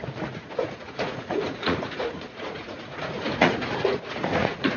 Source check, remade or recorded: remade